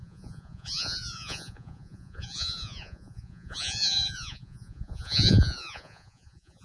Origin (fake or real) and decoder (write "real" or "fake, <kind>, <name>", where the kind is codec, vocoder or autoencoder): fake, vocoder, Vocos